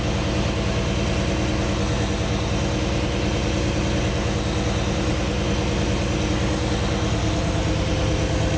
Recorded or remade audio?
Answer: recorded